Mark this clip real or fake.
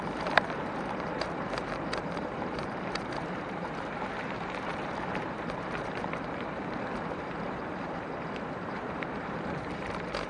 fake